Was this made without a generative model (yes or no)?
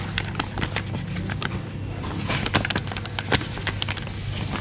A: yes